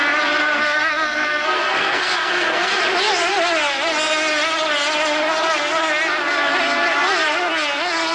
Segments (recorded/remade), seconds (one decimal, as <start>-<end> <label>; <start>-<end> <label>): 0.0-0.4 recorded; 0.4-2.8 remade; 2.8-8.1 recorded